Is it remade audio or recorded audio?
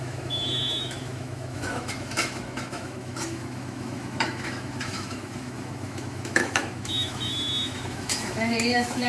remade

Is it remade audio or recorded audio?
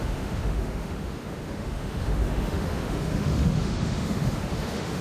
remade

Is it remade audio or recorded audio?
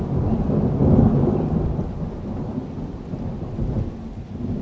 recorded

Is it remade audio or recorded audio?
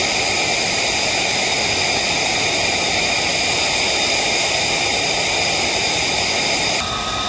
recorded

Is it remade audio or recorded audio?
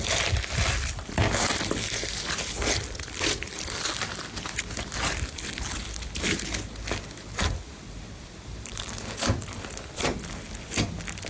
recorded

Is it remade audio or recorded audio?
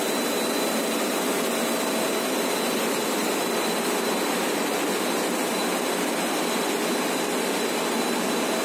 recorded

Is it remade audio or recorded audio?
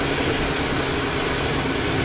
recorded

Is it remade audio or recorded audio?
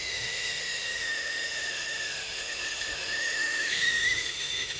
remade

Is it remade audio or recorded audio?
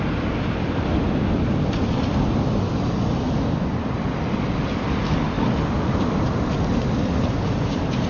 recorded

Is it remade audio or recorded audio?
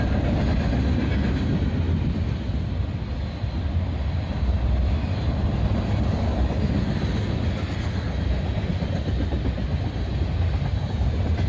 recorded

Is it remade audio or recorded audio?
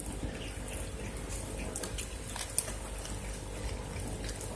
recorded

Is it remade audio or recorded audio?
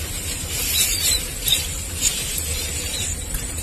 recorded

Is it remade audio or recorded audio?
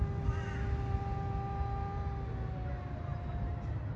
recorded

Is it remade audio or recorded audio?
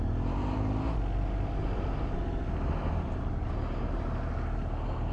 recorded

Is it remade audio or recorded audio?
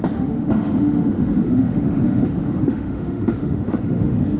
remade